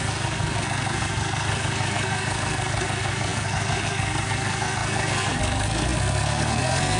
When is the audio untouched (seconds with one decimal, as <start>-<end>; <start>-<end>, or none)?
none